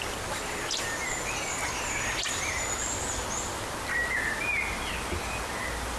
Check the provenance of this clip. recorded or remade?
recorded